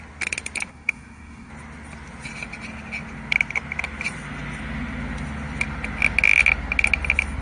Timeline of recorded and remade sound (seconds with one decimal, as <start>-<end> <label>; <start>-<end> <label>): 0.0-0.7 recorded; 0.7-1.5 remade; 1.5-7.4 recorded